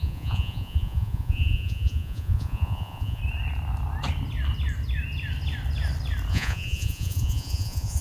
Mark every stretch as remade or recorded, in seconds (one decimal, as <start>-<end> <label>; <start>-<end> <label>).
0.0-3.2 remade; 3.2-6.3 recorded; 6.3-8.0 remade